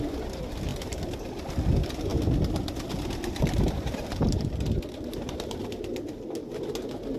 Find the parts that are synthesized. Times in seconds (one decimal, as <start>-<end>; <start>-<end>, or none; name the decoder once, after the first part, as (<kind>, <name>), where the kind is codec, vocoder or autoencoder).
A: none